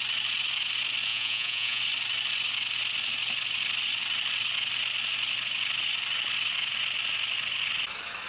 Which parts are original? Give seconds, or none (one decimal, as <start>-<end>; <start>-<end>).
0.0-1.1; 1.8-8.3